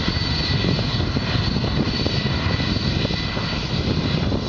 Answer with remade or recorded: recorded